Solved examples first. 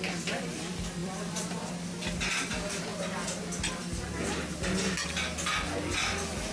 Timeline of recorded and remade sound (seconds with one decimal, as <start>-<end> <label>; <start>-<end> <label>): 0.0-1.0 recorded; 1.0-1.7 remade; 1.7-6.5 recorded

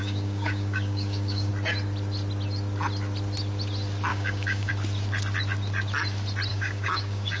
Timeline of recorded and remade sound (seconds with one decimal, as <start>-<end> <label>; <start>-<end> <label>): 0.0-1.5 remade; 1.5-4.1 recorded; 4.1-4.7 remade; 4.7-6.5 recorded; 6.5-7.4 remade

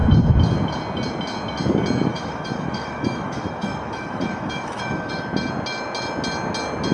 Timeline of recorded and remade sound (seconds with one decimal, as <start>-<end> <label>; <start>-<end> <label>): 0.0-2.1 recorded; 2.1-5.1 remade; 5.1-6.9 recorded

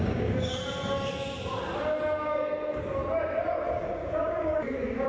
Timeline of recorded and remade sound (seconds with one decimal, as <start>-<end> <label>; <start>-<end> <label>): 0.0-0.5 remade; 0.5-2.2 recorded; 2.2-3.0 remade; 3.0-3.8 recorded; 3.8-5.1 remade